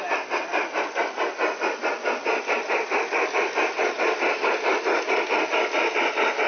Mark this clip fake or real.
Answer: real